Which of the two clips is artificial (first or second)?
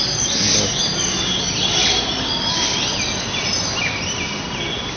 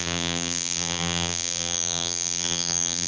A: second